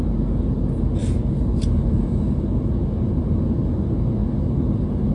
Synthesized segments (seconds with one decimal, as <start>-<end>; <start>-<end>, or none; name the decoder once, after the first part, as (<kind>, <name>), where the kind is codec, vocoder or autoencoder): none